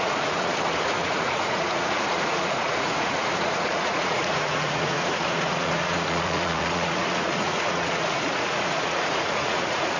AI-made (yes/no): yes